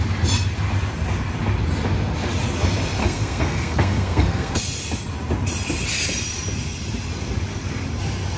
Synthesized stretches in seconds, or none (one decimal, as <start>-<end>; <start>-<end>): 3.0-4.6